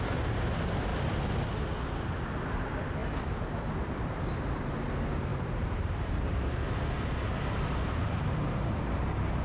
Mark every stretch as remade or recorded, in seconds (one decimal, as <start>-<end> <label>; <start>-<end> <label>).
0.0-5.3 recorded; 5.3-8.7 remade; 8.7-9.4 recorded